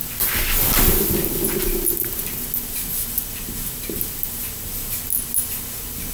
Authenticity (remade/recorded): recorded